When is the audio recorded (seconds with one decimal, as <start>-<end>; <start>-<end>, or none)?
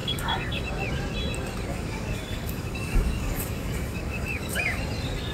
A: 0.6-1.7; 4.8-5.3